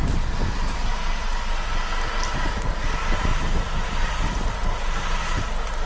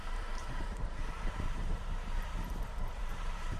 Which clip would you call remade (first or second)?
second